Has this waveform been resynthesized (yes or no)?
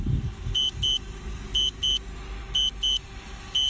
no